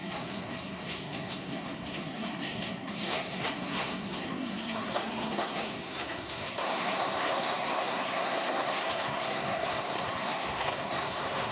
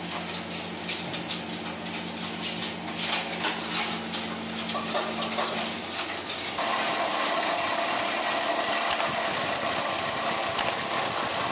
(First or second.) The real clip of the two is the second